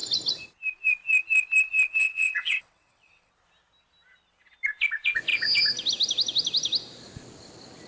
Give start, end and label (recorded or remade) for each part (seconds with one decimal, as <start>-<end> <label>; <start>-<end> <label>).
0.0-2.0 recorded; 2.0-3.3 remade; 3.3-7.9 recorded